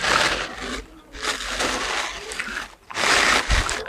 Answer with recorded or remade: recorded